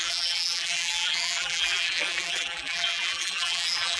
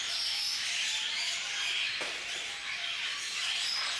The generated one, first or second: first